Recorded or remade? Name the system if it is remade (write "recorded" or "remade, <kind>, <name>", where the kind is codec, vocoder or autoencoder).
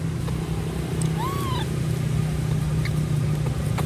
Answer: recorded